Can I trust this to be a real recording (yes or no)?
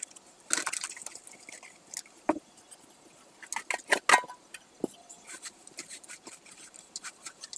yes